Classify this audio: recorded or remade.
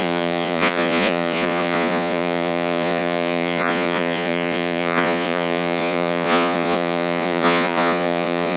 remade